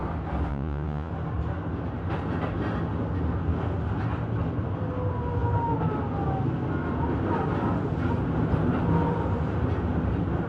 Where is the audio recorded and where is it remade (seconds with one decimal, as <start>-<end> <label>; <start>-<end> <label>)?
0.0-0.5 recorded; 0.5-1.1 remade; 1.1-10.5 recorded